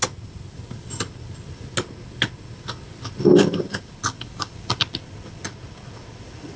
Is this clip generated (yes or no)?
no